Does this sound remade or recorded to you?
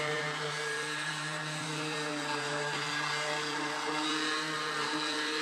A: remade